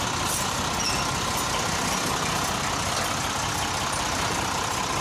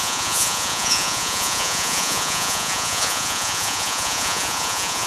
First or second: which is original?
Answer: first